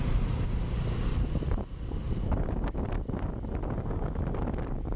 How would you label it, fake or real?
real